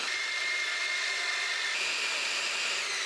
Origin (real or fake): real